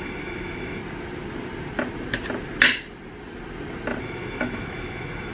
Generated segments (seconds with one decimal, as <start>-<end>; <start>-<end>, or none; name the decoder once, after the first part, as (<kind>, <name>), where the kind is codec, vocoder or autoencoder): 0.0-0.8 (autoencoder, DAC-VAE); 4.0-5.3